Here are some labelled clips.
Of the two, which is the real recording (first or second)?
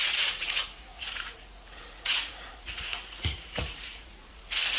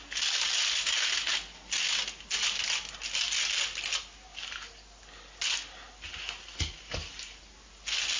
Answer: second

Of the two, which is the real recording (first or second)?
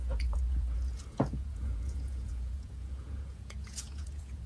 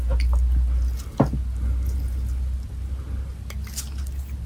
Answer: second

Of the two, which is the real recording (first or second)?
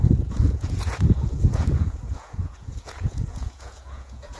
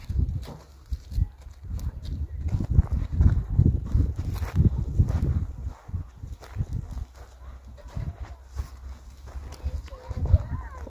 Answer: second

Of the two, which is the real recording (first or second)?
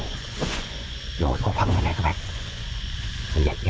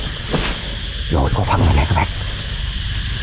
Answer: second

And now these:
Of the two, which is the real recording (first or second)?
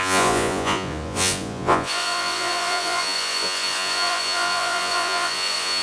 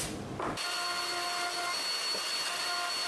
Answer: second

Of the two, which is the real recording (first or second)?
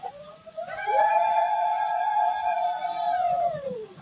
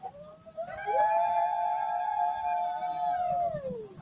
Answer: second